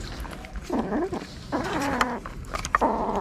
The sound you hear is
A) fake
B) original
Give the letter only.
A